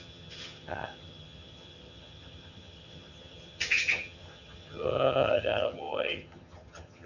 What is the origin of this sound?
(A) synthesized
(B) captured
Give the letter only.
A